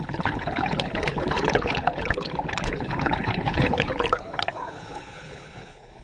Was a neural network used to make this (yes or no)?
yes